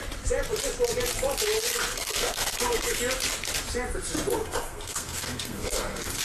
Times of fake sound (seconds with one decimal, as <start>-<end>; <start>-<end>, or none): 1.9-3.0; 4.4-6.2